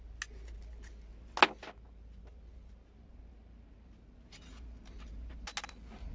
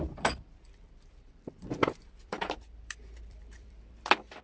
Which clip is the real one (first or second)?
first